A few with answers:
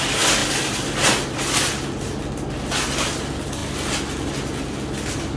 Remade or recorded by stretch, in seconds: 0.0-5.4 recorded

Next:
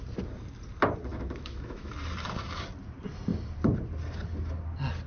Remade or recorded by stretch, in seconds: 0.0-1.1 recorded; 1.1-1.9 remade; 1.9-5.1 recorded

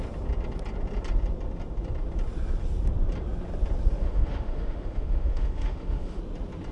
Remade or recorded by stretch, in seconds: 0.0-4.0 recorded; 4.0-6.2 remade; 6.2-6.7 recorded

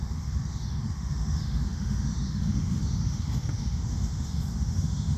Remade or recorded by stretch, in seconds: 0.0-5.2 remade

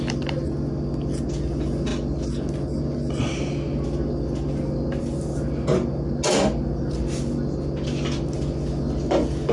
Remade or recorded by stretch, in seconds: 0.0-9.5 recorded

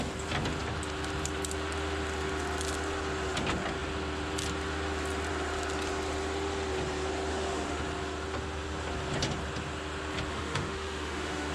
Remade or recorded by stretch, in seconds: 0.0-7.3 recorded; 7.3-7.8 remade; 7.8-10.3 recorded; 10.3-11.5 remade

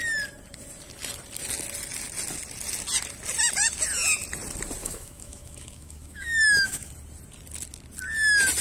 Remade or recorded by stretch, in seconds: 0.0-4.8 recorded; 4.8-6.9 remade; 6.9-8.6 recorded